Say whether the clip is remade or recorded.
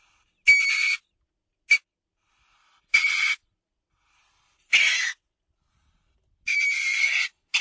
recorded